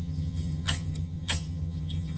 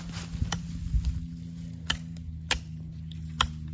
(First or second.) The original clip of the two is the second